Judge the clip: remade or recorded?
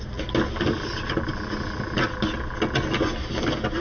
recorded